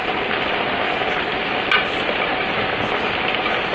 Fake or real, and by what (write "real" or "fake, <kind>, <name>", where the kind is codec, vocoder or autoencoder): real